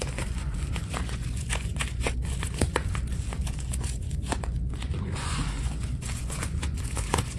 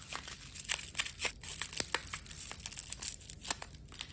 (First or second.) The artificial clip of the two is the first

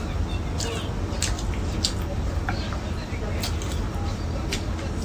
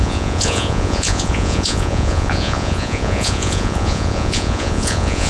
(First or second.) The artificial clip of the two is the second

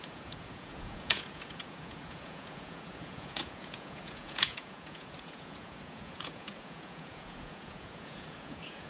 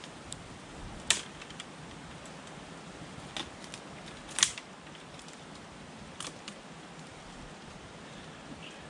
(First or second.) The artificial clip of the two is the first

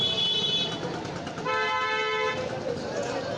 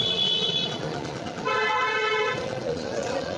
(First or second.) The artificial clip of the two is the second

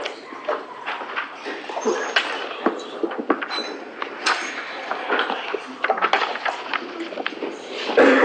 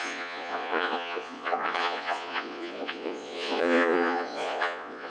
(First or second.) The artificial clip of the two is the second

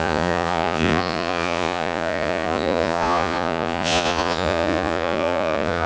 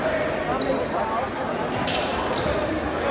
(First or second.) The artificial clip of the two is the first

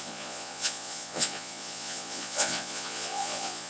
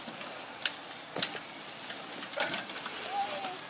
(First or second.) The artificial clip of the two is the first